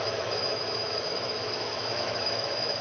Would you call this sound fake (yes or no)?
yes